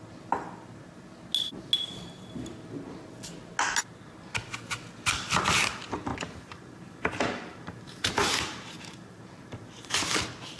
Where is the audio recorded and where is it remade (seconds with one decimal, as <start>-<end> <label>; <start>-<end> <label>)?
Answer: 0.0-6.1 recorded; 6.1-9.9 remade; 9.9-10.6 recorded